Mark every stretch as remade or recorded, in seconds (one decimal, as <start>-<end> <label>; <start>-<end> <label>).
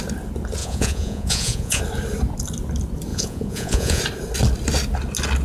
0.0-0.6 recorded; 0.6-1.8 remade; 1.8-3.1 recorded; 3.1-4.0 remade; 4.0-5.4 recorded